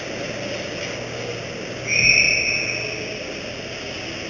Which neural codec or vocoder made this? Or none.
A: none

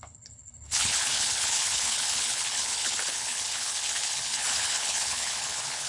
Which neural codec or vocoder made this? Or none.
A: codec, HILCodec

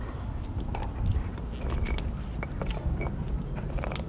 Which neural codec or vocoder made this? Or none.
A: none